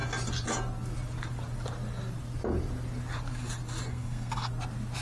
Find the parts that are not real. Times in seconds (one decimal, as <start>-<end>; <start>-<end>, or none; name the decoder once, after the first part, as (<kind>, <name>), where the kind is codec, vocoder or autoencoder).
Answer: 3.9-4.5 (codec, SNAC)